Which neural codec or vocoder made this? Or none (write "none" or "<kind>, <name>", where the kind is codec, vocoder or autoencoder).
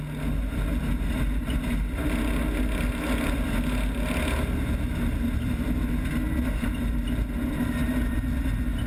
none